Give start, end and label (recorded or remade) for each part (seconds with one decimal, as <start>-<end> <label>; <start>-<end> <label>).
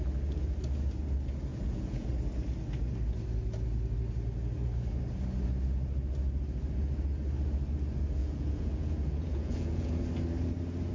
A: 0.0-1.5 recorded; 1.5-2.1 remade; 2.1-8.2 recorded; 8.2-10.0 remade; 10.0-10.9 recorded